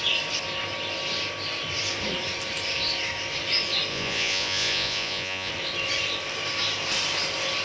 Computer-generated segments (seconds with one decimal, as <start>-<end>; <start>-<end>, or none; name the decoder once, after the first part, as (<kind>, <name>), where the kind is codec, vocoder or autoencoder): 3.9-5.5 (vocoder, Vocos)